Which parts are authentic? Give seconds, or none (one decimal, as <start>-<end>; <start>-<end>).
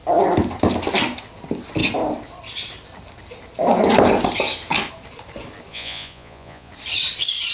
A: 0.0-5.7; 6.7-7.5